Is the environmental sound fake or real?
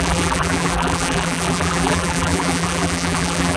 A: fake